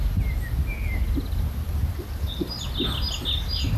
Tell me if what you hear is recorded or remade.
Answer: recorded